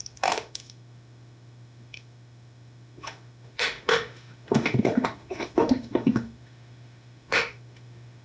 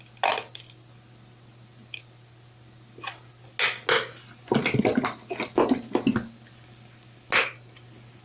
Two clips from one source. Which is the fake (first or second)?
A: first